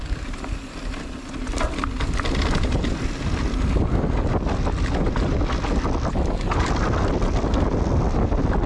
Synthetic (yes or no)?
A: no